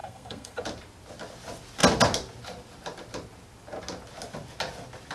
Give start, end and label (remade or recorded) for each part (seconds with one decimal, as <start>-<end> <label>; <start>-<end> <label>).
0.0-0.6 remade; 0.6-5.1 recorded